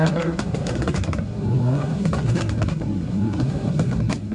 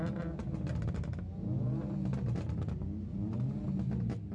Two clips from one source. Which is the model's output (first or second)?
first